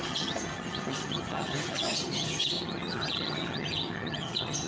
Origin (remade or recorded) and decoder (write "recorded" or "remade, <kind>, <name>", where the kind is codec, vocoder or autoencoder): remade, vocoder, HiFi-GAN